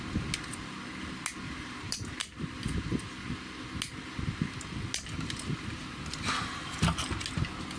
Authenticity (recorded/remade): recorded